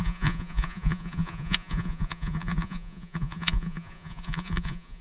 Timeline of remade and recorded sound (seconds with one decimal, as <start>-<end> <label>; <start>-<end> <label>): 0.0-5.0 remade